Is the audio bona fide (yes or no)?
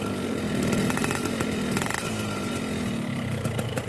yes